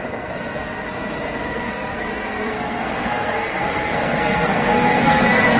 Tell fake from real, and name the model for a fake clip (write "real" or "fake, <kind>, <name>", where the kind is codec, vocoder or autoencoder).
fake, codec, SNAC